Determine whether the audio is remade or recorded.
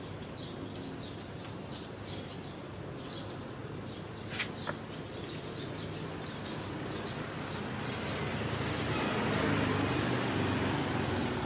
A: recorded